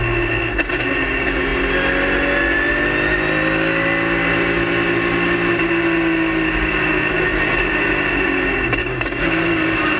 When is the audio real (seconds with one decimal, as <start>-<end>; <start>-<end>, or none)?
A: 0.0-8.8